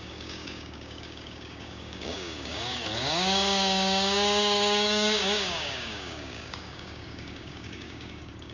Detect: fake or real fake